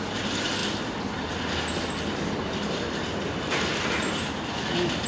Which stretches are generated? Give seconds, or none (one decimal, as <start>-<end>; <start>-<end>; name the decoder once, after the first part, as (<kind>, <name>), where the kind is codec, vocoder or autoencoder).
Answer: none